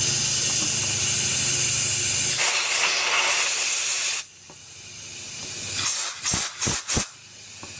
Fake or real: real